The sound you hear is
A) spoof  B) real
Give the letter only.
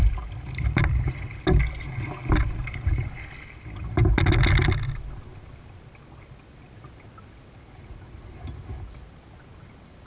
B